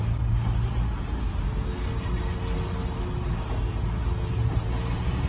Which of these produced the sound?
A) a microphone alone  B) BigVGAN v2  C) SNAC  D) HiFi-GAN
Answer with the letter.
A